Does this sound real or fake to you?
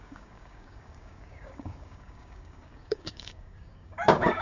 fake